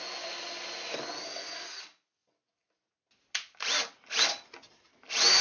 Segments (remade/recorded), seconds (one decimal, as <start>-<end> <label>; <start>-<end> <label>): 0.0-5.4 recorded